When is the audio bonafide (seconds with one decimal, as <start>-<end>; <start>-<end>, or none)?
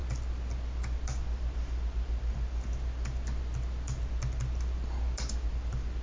0.0-6.0